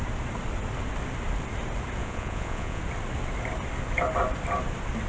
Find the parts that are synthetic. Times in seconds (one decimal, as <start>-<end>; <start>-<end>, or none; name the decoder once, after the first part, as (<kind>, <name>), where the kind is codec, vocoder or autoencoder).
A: 2.0-2.8 (vocoder, Vocos)